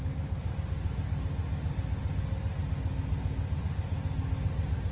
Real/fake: real